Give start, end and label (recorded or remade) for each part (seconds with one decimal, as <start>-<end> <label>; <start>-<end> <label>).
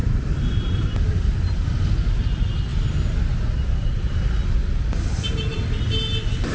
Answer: 0.0-1.3 remade; 1.3-6.5 recorded